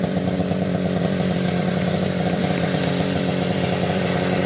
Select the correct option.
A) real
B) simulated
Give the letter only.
B